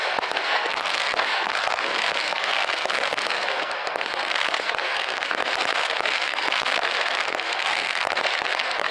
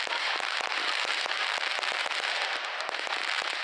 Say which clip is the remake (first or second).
first